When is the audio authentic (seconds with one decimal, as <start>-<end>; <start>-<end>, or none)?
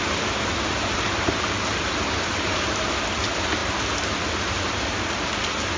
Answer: 0.0-5.8